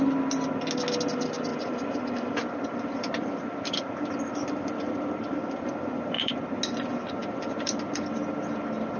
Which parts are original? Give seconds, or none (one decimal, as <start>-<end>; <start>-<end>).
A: 0.0-1.5; 6.3-7.2; 7.9-9.0